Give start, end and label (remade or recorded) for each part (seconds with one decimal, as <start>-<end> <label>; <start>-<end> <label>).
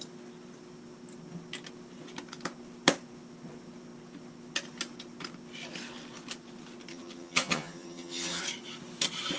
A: 0.0-6.9 recorded; 6.9-8.4 remade; 8.4-9.4 recorded